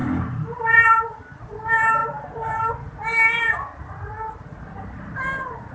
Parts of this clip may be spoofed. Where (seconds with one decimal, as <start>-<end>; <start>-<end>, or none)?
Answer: 0.0-1.4; 2.0-2.7